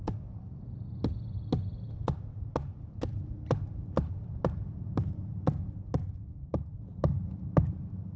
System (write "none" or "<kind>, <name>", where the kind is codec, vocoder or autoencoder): none